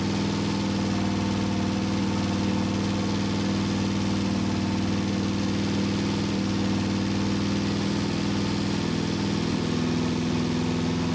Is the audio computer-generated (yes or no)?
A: no